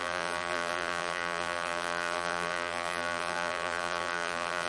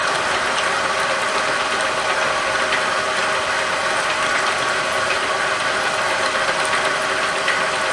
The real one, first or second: second